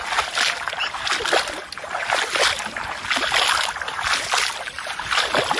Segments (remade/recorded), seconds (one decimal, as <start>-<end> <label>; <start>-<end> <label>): 0.0-5.6 recorded